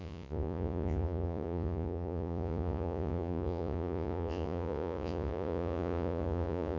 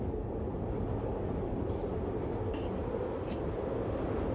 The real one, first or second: second